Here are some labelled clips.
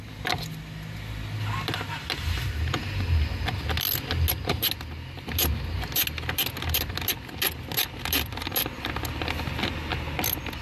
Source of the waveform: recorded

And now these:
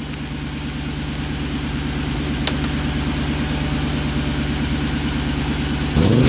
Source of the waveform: recorded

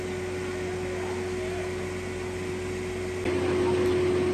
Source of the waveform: recorded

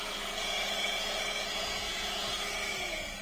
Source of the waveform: remade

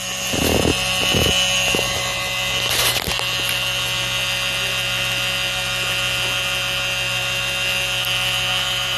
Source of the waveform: recorded